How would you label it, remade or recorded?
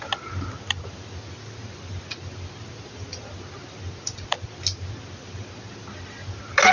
recorded